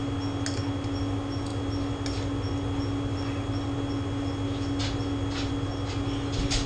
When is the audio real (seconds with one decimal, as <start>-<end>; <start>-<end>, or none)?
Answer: 0.0-6.7